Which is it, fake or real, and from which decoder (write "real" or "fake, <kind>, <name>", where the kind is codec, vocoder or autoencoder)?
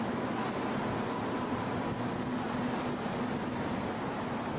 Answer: real